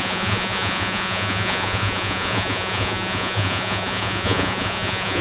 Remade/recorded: remade